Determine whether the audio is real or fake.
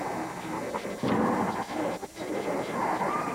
real